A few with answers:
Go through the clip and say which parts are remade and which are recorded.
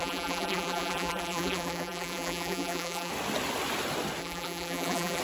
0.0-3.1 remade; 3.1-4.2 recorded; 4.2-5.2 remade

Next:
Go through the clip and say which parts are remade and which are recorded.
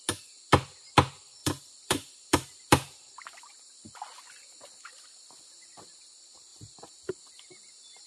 0.0-1.4 recorded; 1.4-3.5 remade; 3.5-6.5 recorded; 6.5-7.1 remade; 7.1-8.1 recorded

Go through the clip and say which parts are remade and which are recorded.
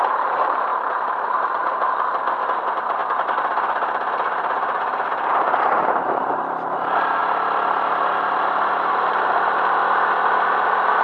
0.0-3.0 remade; 3.0-5.3 recorded; 5.3-7.2 remade; 7.2-8.7 recorded; 8.7-9.8 remade; 9.8-10.4 recorded; 10.4-11.0 remade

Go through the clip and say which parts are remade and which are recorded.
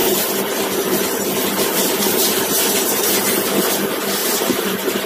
0.0-3.1 remade; 3.1-4.2 recorded; 4.2-5.1 remade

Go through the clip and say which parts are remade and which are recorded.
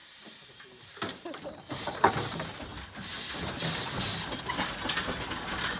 0.0-2.1 remade; 2.1-5.8 recorded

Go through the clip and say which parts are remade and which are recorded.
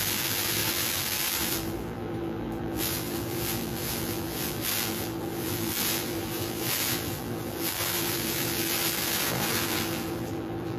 0.0-10.8 remade